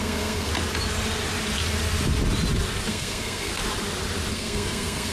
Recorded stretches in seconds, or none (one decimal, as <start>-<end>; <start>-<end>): 0.5-2.9; 3.5-4.3

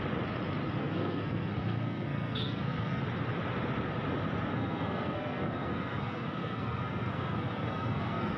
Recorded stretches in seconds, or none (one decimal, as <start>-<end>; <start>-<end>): 0.0-0.8; 3.0-4.5